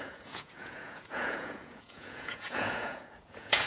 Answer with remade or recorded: remade